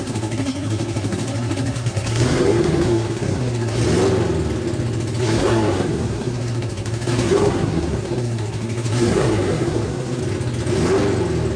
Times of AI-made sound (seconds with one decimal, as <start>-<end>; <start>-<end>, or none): 0.0-3.8; 5.2-10.2